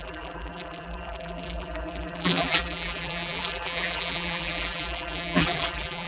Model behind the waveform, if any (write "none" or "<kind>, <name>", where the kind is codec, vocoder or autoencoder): vocoder, BigVGAN v2